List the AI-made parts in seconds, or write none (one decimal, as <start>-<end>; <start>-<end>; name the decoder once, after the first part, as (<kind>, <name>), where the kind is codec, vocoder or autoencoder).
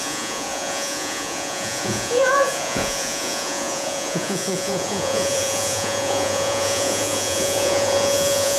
0.0-8.6 (vocoder, Vocos)